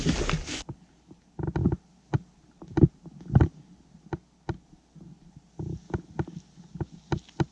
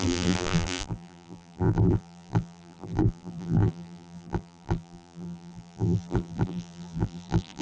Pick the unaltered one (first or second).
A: first